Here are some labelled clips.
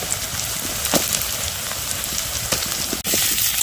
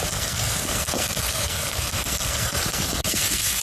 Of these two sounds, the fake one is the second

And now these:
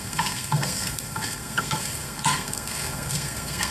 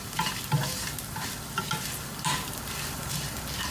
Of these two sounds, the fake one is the first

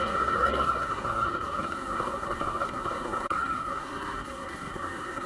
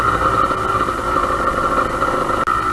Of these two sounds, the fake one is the first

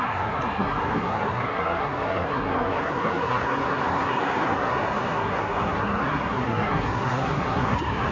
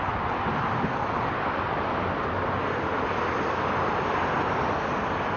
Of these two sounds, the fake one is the first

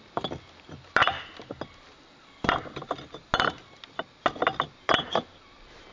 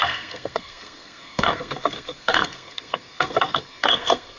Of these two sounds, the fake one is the second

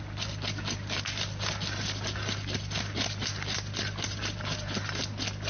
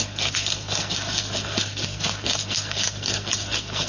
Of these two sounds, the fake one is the second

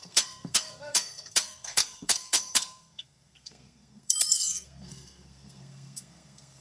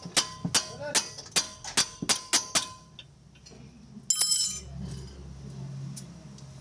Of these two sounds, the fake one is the first